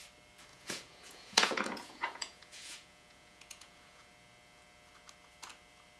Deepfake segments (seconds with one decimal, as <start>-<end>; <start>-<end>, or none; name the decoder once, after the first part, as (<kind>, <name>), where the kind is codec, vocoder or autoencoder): 0.5-4.1 (vocoder, Vocos)